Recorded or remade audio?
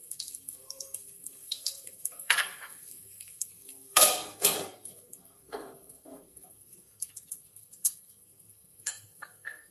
remade